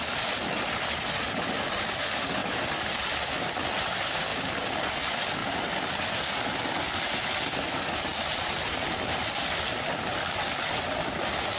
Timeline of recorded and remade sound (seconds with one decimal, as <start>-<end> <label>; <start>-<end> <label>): 0.0-4.3 remade; 4.3-4.9 recorded; 4.9-11.6 remade